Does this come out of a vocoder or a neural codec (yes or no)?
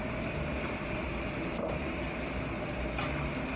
no